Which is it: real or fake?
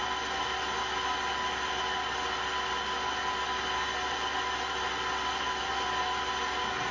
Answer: real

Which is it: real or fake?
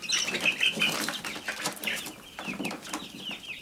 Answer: real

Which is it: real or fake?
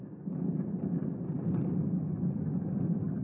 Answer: real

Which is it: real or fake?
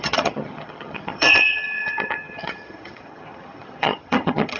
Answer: fake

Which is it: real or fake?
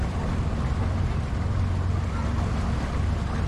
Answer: real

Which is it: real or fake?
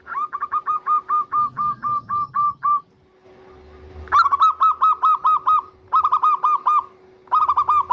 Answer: real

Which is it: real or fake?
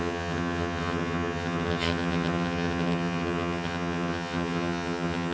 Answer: fake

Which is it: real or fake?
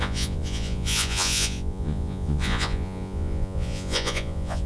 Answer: fake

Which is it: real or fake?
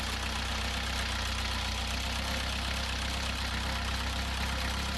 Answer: real